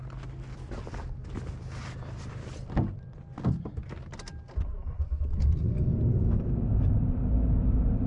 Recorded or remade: recorded